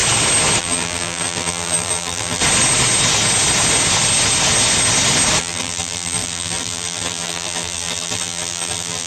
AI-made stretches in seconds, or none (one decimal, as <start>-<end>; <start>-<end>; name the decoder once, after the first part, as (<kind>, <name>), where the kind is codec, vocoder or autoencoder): 0.6-2.4 (vocoder, BigVGAN v2); 5.4-9.1